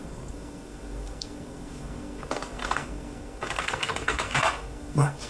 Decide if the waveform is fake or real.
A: fake